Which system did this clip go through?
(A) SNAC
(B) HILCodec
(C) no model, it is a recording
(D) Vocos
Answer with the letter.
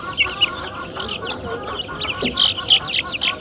C